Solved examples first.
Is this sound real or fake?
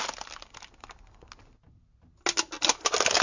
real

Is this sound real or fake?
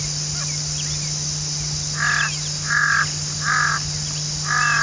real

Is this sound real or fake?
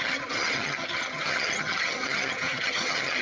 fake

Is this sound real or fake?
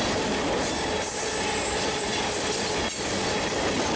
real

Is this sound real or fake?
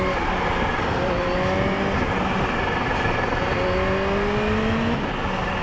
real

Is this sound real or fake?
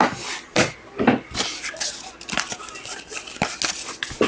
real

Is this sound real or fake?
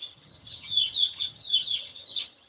fake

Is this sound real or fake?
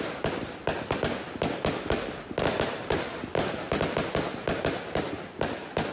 real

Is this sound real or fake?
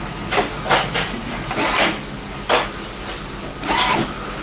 real